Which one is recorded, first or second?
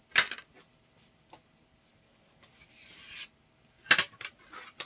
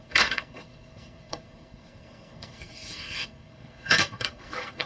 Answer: first